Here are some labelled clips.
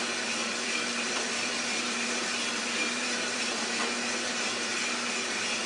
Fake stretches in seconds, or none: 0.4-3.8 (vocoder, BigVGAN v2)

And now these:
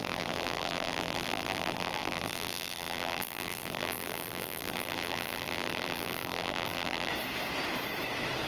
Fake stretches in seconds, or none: 0.0-7.1 (vocoder, BigVGAN v2)

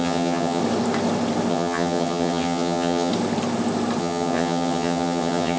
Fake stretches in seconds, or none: 0.0-0.6 (vocoder, HiFi-GAN); 1.5-3.1; 4.0-5.6

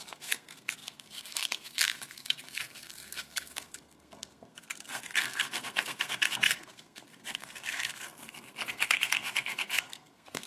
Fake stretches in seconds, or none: 0.0-10.5 (codec, SNAC)

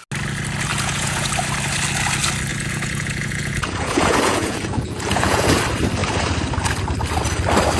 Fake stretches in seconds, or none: 0.7-1.3 (vocoder, Vocos); 2.5-5.6

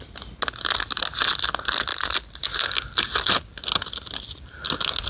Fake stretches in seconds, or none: none